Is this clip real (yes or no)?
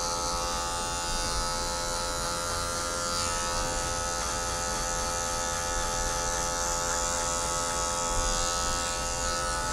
yes